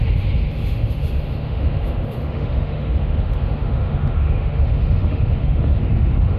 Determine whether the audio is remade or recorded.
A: remade